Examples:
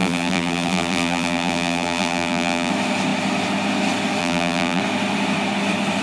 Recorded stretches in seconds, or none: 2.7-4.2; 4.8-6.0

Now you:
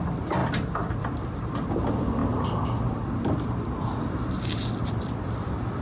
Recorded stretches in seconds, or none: 0.0-0.4; 1.7-5.8